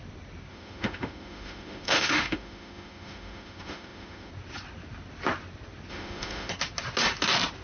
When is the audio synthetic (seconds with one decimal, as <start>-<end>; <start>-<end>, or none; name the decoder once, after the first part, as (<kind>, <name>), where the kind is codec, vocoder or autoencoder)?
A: 0.5-4.3 (autoencoder, DAC-VAE); 5.9-6.5